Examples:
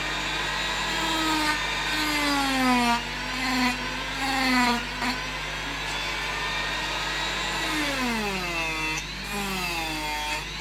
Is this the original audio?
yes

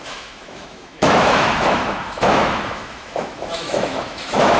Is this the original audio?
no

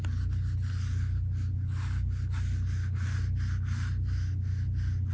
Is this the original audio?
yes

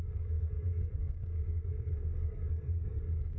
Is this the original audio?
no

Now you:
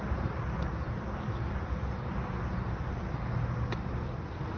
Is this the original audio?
yes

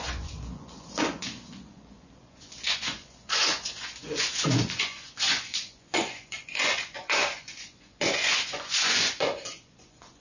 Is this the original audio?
no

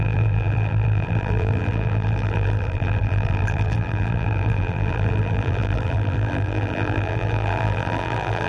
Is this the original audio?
no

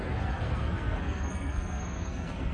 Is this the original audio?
no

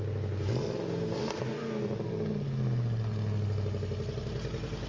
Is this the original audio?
yes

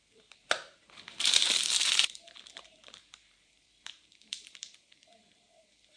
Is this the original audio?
no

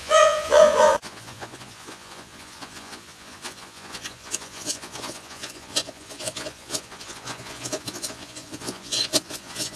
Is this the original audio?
no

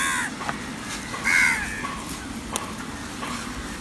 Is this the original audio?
yes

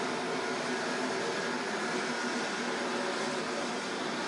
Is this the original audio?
yes